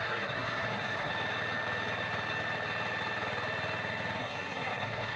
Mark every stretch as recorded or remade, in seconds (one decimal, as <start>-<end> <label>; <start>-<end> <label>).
0.0-1.1 remade; 1.1-4.2 recorded; 4.2-5.2 remade